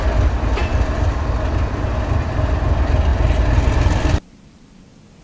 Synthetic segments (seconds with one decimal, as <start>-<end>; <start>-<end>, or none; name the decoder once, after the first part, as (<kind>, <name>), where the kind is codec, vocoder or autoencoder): 3.1-4.8 (vocoder, BigVGAN v2)